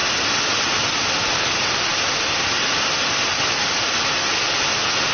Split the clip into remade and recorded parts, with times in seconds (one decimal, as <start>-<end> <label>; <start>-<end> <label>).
0.0-5.1 recorded